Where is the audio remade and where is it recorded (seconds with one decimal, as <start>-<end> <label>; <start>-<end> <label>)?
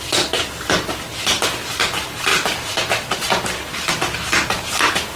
0.0-5.2 remade